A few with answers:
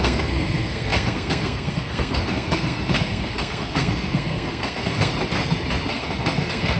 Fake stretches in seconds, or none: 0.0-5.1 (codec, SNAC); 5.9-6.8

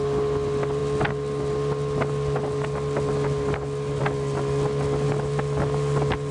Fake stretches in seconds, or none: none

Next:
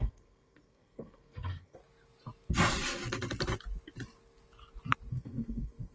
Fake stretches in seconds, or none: 0.0-1.8 (codec, SNAC); 5.1-5.9